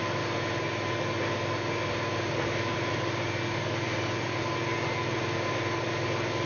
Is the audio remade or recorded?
recorded